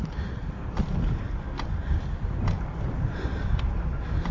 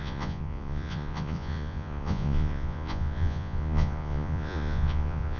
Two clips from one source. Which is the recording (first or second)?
first